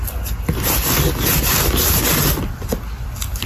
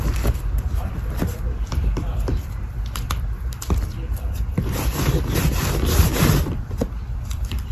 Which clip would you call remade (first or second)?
second